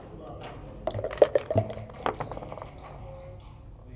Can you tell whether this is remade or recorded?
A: recorded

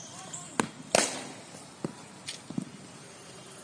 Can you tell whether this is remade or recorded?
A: recorded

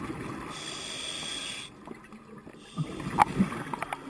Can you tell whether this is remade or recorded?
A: recorded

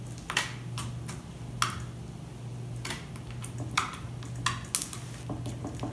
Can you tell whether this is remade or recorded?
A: recorded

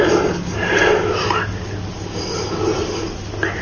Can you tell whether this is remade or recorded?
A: recorded